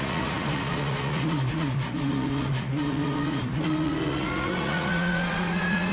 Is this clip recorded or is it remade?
remade